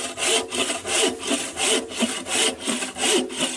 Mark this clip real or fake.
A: real